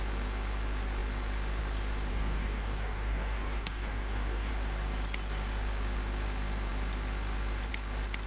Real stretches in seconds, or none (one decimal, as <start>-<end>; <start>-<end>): 0.0-2.1; 4.5-8.3